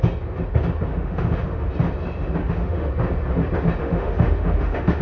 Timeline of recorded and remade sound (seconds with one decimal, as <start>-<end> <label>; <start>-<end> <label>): 0.0-0.9 recorded; 0.9-1.7 remade; 1.7-2.4 recorded; 2.4-2.9 remade; 2.9-3.8 recorded; 3.8-5.0 remade